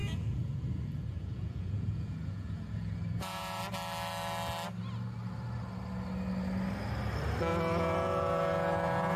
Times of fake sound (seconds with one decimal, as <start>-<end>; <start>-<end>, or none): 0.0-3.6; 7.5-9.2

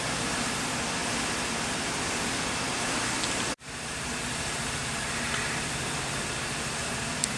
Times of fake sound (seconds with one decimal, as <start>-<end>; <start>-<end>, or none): none

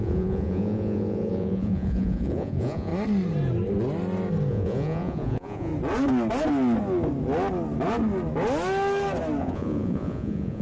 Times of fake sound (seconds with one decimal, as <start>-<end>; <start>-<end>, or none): 0.0-2.9; 4.5-5.7; 9.4-10.6